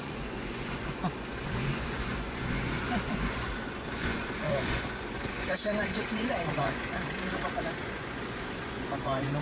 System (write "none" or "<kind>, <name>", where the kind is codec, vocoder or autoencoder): vocoder, Vocos